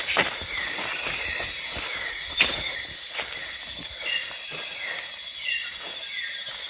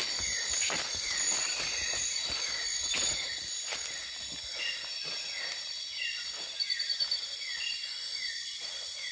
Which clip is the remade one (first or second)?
second